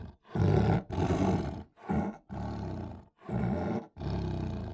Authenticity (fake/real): real